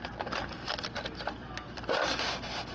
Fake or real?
real